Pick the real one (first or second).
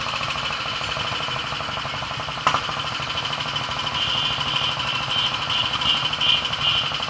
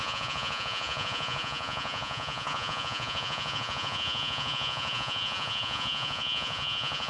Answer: first